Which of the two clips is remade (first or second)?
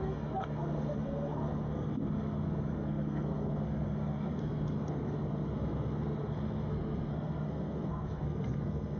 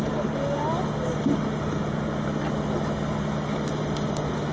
first